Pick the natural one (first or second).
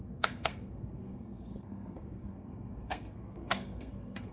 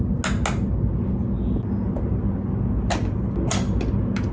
second